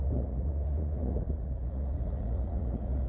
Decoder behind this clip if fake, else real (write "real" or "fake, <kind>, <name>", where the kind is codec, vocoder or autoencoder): fake, vocoder, Vocos